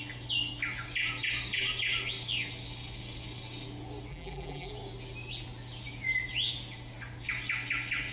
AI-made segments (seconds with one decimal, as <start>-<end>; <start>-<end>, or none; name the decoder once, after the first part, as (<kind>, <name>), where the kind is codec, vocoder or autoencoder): 4.1-4.7 (vocoder, BigVGAN v2)